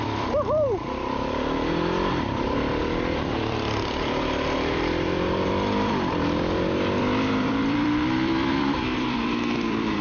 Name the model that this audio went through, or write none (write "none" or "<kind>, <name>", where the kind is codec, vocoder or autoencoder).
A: vocoder, BigVGAN v2